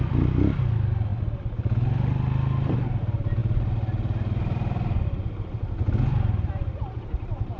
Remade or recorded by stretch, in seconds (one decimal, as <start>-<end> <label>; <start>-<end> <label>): 0.0-6.7 recorded; 6.7-7.6 remade

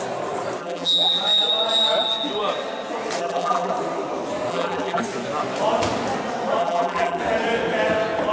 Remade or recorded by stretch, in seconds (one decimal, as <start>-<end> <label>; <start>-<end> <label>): 0.0-0.6 recorded; 0.6-1.2 remade; 1.2-3.2 recorded; 3.2-3.7 remade; 3.7-4.5 recorded; 4.5-5.0 remade; 5.0-6.6 recorded; 6.6-7.2 remade; 7.2-8.3 recorded

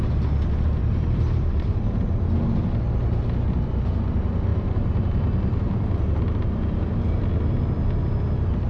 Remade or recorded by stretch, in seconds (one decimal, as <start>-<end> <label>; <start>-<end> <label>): 0.0-0.8 recorded; 0.8-1.8 remade; 1.8-4.5 recorded; 4.5-6.9 remade; 6.9-8.7 recorded